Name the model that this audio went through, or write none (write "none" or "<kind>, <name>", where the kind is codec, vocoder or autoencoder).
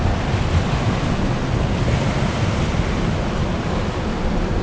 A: none